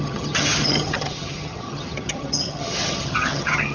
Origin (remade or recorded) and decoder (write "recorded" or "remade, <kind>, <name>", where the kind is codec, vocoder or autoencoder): remade, vocoder, HiFi-GAN